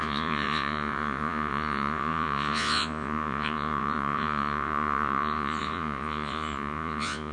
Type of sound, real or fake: fake